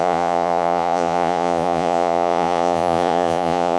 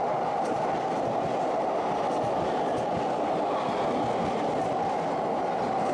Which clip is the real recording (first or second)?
second